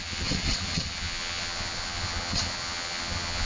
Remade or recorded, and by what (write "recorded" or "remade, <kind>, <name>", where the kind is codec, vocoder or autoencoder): remade, vocoder, WaveNeXt